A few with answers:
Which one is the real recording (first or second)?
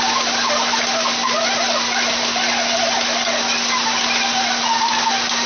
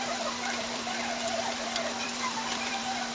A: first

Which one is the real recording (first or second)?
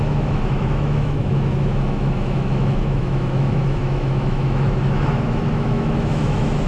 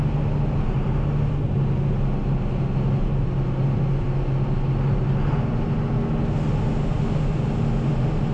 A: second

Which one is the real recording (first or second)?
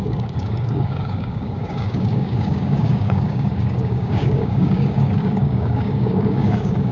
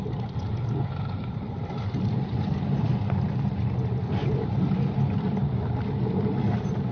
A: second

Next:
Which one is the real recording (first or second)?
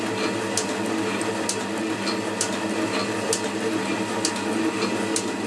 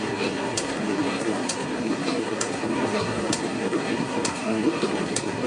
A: first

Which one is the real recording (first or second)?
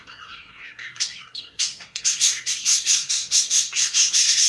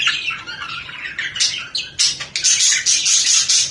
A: second